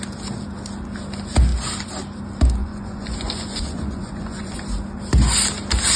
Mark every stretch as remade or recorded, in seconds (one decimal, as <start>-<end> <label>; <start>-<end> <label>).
0.0-2.6 recorded; 2.6-4.6 remade; 4.6-6.0 recorded